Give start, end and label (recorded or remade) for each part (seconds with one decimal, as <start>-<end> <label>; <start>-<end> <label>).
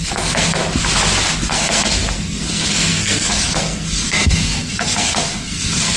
0.0-0.6 remade; 0.6-1.5 recorded; 1.5-6.0 remade